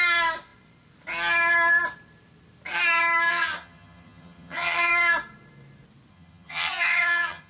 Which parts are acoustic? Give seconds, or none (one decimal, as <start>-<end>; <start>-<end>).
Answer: 0.0-3.3; 4.9-6.1